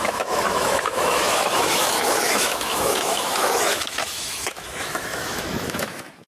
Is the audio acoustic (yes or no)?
no